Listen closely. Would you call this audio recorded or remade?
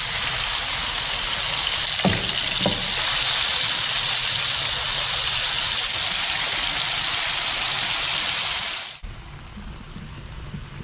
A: recorded